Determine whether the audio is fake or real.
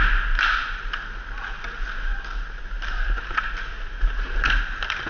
real